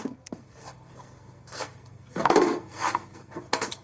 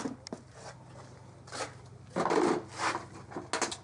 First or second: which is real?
second